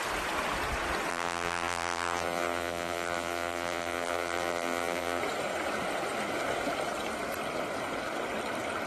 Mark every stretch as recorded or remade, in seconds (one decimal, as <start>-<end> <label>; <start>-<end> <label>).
0.0-1.1 recorded; 1.1-5.2 remade; 5.2-8.9 recorded